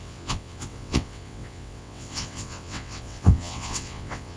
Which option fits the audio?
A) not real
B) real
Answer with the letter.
A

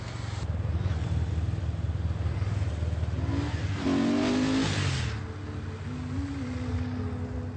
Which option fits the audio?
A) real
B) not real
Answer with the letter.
A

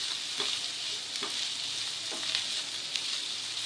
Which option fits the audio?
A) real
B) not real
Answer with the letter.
A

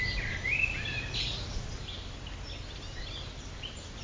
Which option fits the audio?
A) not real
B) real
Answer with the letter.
B